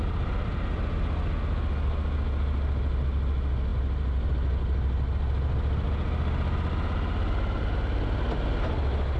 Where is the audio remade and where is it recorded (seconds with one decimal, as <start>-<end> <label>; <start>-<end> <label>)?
0.0-9.2 recorded

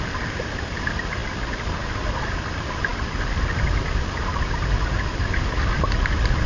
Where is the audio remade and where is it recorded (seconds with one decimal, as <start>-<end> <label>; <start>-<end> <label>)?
0.0-6.5 recorded

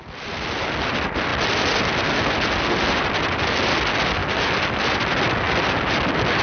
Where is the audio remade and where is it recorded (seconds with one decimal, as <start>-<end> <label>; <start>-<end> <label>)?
0.0-6.4 recorded

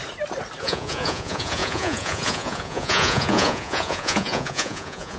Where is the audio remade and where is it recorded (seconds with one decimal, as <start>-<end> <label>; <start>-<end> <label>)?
0.0-0.6 recorded; 0.6-5.2 remade

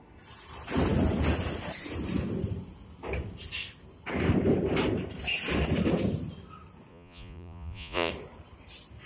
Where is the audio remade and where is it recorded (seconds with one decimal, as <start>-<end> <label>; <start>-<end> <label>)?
0.0-6.9 recorded; 6.9-8.1 remade; 8.1-9.1 recorded

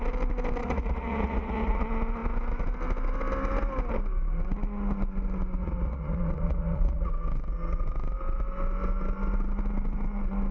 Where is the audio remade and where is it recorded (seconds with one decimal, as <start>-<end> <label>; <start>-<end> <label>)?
0.0-0.6 recorded; 0.6-1.8 remade; 1.8-5.6 recorded; 5.6-7.1 remade; 7.1-10.5 recorded

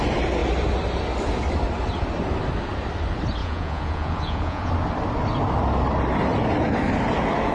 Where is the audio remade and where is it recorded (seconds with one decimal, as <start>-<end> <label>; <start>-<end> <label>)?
0.0-3.4 recorded; 3.4-4.7 remade; 4.7-7.5 recorded

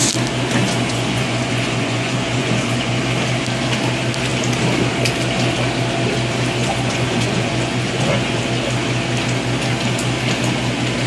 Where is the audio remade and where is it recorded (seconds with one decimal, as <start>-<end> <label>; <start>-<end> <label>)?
0.0-0.6 recorded; 0.6-3.0 remade; 3.0-6.6 recorded; 6.6-8.4 remade; 8.4-11.1 recorded